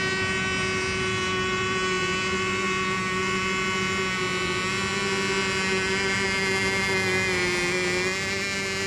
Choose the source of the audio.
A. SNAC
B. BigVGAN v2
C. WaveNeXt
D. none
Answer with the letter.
D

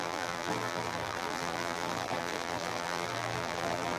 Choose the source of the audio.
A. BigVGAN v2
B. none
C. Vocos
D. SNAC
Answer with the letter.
A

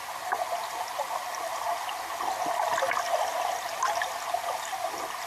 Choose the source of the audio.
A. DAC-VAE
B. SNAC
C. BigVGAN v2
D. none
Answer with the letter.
D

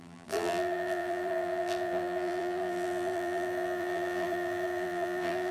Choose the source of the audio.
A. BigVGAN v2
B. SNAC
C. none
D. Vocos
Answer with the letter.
A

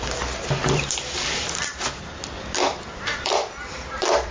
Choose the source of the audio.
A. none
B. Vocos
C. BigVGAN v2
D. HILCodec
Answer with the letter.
C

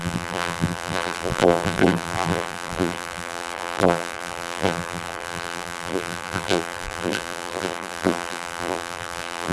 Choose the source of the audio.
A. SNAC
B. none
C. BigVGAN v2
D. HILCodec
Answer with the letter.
C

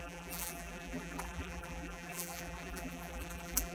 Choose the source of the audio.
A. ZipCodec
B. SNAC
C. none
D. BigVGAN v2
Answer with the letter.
D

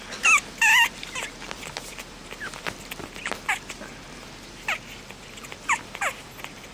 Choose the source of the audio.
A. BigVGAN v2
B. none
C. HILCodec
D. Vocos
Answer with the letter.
B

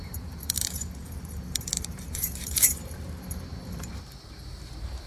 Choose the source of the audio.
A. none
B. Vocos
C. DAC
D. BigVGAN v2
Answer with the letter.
D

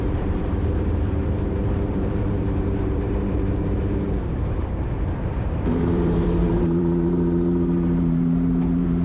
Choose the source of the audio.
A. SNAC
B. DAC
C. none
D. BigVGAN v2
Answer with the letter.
D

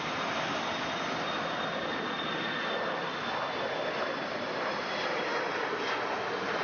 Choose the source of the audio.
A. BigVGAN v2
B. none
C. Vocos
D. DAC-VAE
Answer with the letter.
B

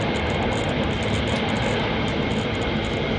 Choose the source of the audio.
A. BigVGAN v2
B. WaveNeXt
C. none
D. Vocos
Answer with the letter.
C